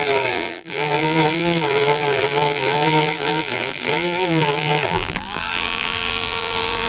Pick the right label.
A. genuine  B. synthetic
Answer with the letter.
B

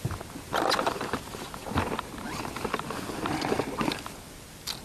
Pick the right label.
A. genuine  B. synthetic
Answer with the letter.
A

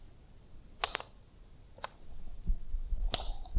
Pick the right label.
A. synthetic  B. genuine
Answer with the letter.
B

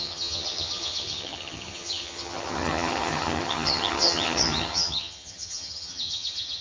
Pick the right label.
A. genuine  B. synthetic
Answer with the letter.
B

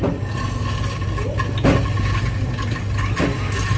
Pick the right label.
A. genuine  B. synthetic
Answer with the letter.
A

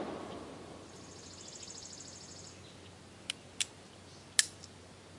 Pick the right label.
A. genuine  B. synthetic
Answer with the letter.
A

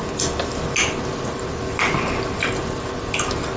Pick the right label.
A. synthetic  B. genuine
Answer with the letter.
B